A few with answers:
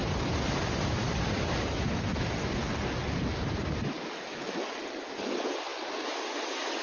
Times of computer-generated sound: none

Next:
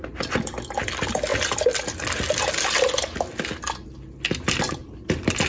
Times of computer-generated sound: none

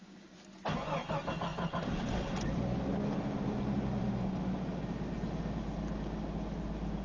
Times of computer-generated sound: none

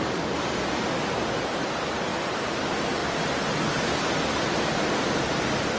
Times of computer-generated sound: none

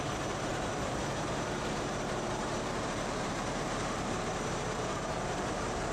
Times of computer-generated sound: 0.0-5.9 (vocoder, BigVGAN v2)